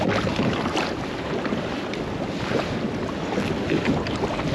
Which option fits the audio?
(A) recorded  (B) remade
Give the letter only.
A